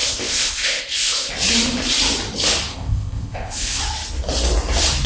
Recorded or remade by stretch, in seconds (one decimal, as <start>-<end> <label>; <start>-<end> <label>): 0.0-1.3 remade; 1.3-2.7 recorded; 2.7-3.8 remade; 3.8-5.1 recorded